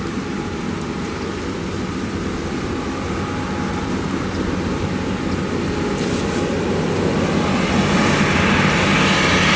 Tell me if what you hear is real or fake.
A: real